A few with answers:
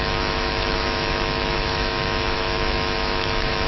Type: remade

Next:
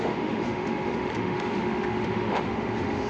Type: remade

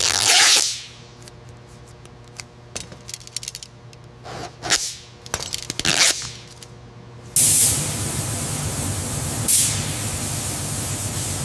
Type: recorded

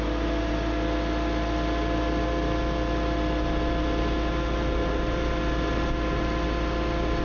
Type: recorded